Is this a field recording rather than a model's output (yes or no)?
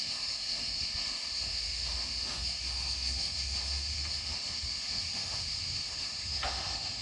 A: no